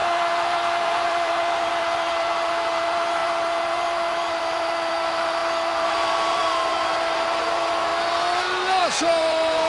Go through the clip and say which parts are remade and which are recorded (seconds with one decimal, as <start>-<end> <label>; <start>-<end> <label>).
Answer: 0.0-7.9 remade; 7.9-8.8 recorded; 8.8-9.7 remade